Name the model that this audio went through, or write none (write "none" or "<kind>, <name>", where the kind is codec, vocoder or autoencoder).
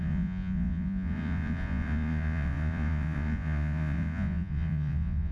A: vocoder, Vocos